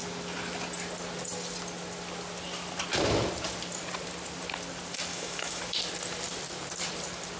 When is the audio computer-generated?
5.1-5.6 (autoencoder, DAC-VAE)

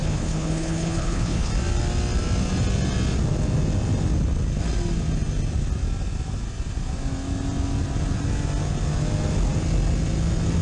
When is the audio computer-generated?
0.0-1.5 (codec, HILCodec)

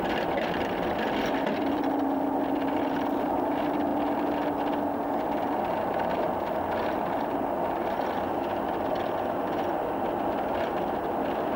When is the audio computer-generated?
none